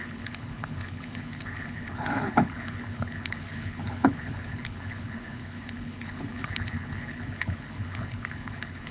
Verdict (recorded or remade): remade